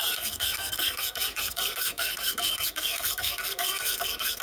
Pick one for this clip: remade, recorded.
remade